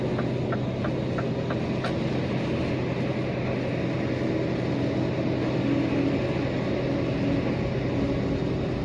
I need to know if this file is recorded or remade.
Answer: recorded